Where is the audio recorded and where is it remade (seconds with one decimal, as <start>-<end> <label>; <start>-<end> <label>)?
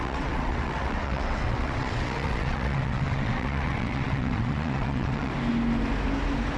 0.0-5.3 remade; 5.3-6.6 recorded